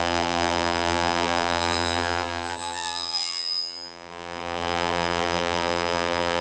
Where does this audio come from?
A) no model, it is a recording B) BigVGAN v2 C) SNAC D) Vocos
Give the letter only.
B